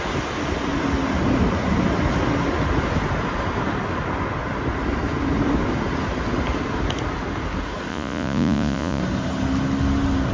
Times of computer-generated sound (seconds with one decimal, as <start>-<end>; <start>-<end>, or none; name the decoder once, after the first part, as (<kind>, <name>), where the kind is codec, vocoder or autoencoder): 7.9-9.0 (vocoder, Vocos)